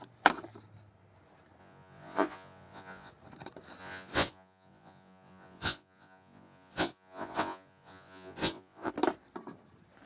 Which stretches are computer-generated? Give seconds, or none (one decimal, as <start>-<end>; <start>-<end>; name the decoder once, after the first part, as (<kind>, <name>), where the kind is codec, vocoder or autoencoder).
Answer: 1.6-3.1 (vocoder, Vocos); 3.8-8.9